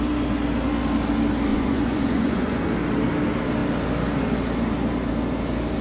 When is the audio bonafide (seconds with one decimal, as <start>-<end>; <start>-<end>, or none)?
0.0-1.5; 2.6-5.8